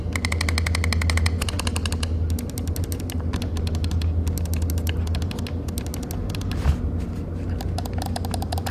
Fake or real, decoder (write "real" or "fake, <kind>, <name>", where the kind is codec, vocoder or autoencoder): real